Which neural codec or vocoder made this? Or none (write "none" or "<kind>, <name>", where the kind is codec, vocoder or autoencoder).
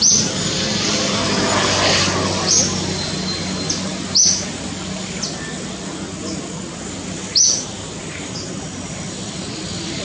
none